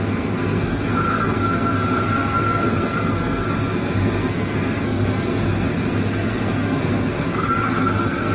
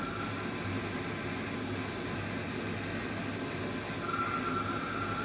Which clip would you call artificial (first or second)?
first